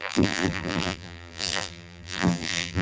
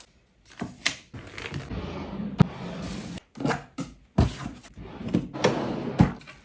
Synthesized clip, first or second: first